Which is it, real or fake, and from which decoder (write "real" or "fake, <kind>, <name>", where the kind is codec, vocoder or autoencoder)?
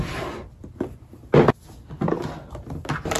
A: real